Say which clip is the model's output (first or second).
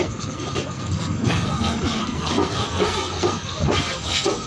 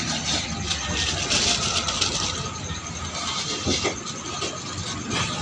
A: first